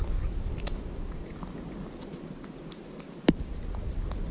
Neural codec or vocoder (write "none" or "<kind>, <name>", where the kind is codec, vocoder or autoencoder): none